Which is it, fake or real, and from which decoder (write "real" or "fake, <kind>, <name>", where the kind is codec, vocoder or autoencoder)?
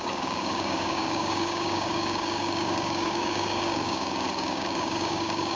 fake, codec, DAC